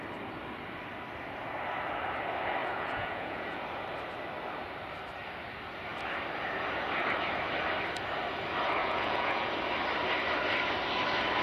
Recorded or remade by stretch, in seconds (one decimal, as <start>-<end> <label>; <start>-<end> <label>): 0.0-2.6 recorded; 2.6-3.6 remade; 3.6-8.8 recorded; 8.8-9.5 remade; 9.5-11.4 recorded